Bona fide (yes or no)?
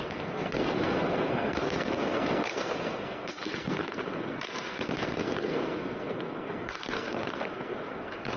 no